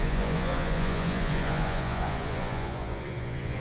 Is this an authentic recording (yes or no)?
no